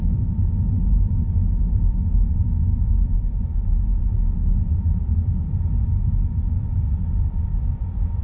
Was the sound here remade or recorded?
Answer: remade